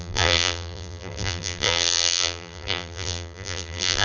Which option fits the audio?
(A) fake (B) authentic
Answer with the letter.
A